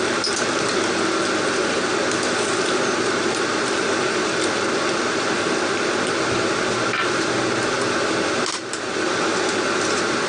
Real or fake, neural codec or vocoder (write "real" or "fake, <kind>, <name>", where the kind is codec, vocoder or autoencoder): real